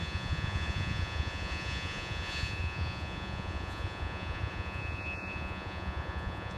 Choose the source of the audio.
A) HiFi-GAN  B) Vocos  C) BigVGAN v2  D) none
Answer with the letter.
B